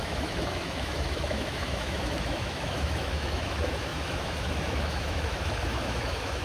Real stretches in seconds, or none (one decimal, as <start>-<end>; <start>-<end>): none